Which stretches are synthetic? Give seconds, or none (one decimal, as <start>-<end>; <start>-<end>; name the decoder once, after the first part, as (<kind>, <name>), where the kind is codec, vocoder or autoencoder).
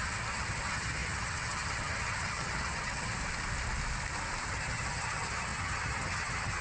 0.0-3.2 (vocoder, HiFi-GAN); 4.5-6.6